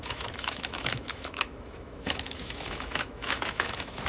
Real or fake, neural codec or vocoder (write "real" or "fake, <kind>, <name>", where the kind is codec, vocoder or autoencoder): fake, autoencoder, DAC-VAE